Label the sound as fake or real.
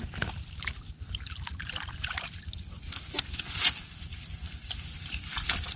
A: real